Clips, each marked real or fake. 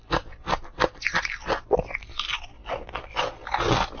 real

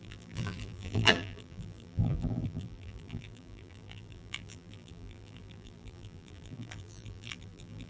fake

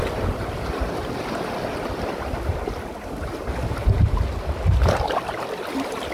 real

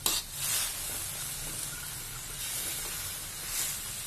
real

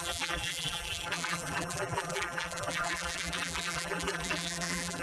fake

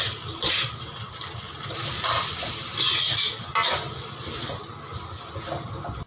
real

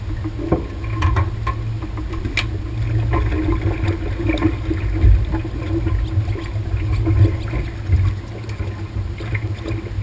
real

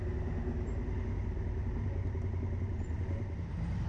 real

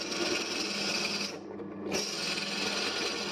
real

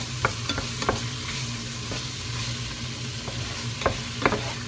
real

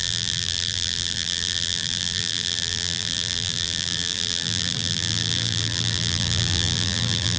fake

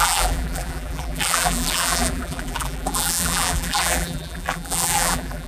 fake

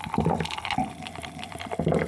fake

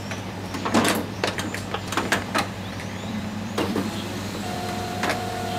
fake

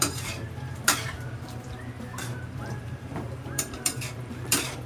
fake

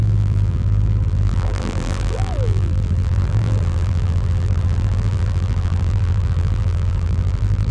fake